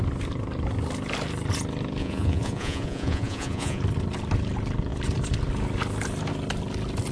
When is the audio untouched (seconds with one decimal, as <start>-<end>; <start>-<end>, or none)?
0.0-2.0; 3.8-7.1